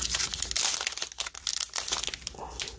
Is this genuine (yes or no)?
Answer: yes